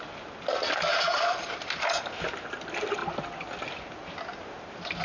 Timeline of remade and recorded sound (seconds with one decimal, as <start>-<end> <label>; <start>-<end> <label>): 0.0-1.1 recorded; 1.1-2.0 remade; 2.0-5.0 recorded